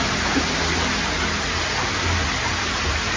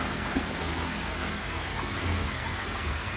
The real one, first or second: first